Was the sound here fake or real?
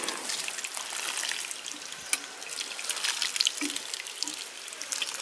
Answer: real